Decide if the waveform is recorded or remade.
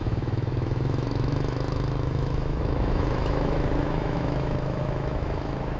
remade